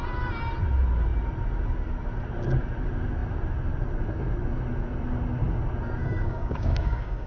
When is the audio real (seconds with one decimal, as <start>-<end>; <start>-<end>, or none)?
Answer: 0.0-6.0